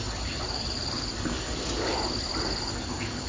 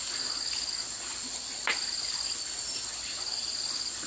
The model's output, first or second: first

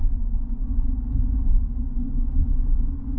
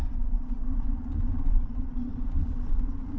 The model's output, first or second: second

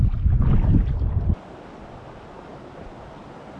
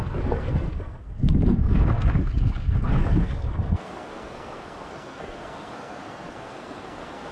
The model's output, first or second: second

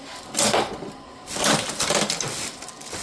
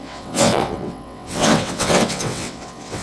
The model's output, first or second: second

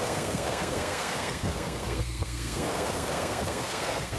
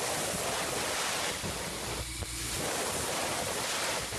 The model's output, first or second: first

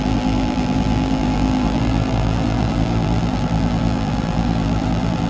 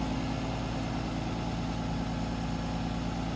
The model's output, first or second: first